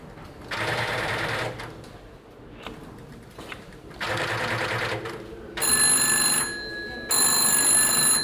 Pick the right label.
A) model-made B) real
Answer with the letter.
B